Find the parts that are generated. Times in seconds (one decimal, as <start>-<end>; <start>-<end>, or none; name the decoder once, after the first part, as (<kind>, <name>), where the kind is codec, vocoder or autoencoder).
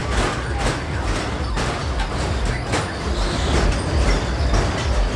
none